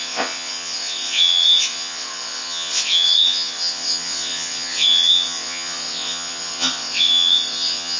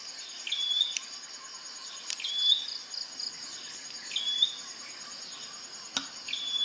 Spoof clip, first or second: first